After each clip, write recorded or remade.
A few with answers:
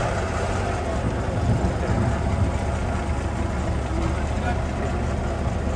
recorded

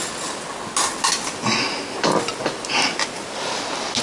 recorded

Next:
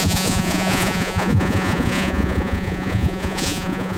remade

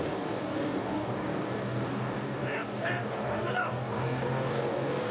remade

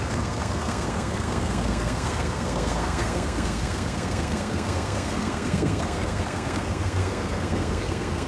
remade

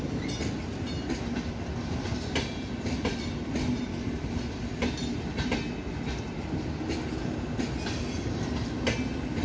recorded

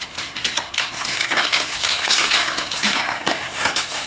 remade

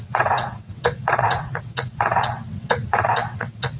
remade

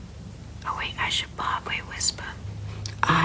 recorded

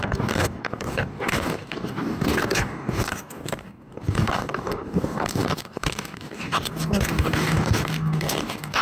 remade